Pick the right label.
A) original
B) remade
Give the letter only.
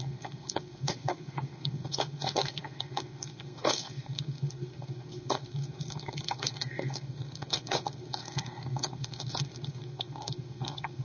B